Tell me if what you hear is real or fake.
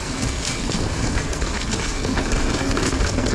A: fake